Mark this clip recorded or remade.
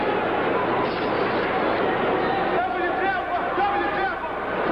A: recorded